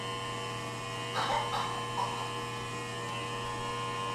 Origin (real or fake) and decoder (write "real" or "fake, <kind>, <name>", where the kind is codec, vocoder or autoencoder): real